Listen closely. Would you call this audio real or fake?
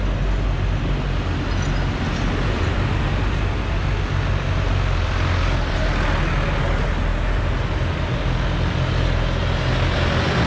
real